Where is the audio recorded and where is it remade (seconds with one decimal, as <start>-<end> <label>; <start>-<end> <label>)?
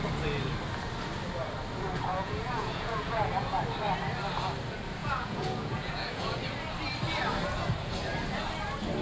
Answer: 0.0-2.1 recorded; 2.1-3.6 remade; 3.6-5.0 recorded; 5.0-6.4 remade; 6.4-9.0 recorded